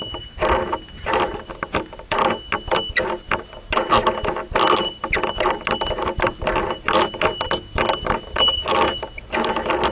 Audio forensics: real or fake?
real